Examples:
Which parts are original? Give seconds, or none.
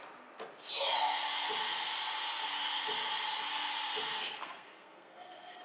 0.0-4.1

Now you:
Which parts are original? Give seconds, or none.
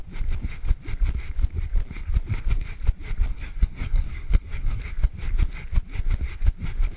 0.0-3.3; 4.8-7.0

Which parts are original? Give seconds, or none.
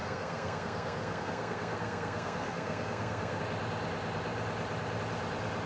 3.4-5.7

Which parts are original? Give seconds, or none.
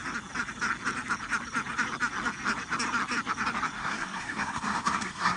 0.0-3.8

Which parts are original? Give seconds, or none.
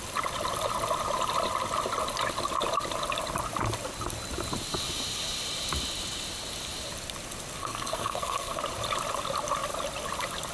0.0-7.6; 8.6-10.5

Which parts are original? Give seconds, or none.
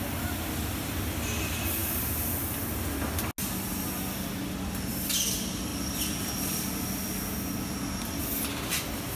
0.0-9.1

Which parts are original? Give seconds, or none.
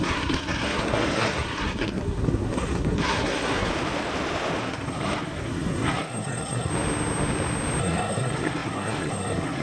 3.7-4.6; 6.7-7.8